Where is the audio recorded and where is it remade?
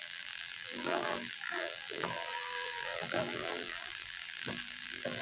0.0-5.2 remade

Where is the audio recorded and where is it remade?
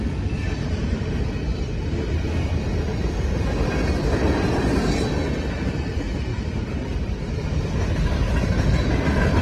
0.0-6.3 recorded; 6.3-7.6 remade; 7.6-9.4 recorded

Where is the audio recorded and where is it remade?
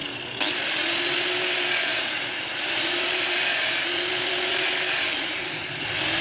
0.0-1.9 recorded; 1.9-5.6 remade; 5.6-6.2 recorded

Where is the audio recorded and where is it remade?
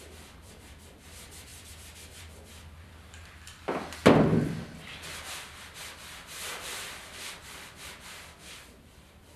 0.0-4.0 remade; 4.0-4.9 recorded; 4.9-9.4 remade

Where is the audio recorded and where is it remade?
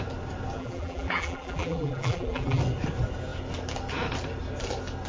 0.0-0.6 recorded; 0.6-2.6 remade; 2.6-5.1 recorded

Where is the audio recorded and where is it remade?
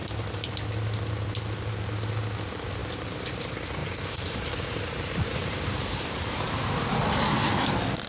0.0-3.8 recorded; 3.8-6.9 remade; 6.9-8.1 recorded